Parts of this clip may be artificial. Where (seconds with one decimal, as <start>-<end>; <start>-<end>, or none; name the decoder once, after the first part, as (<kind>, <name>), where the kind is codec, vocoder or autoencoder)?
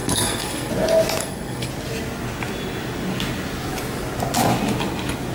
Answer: 0.0-0.7 (codec, SNAC); 1.2-1.7